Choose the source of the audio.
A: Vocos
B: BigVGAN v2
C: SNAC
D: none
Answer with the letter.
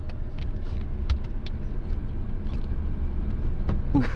D